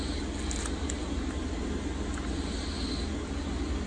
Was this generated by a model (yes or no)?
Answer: no